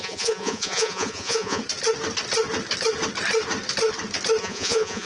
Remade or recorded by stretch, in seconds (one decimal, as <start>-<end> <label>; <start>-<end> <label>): 0.0-1.6 remade; 1.6-4.4 recorded; 4.4-5.0 remade